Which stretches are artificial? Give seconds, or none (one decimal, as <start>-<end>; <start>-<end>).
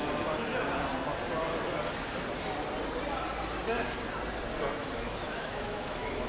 4.8-6.3